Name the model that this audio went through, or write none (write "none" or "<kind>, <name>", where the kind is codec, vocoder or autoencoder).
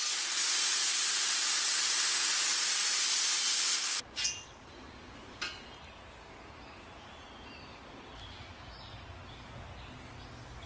none